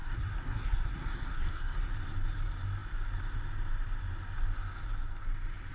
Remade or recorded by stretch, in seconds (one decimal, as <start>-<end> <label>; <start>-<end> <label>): 0.0-1.9 remade; 1.9-5.7 recorded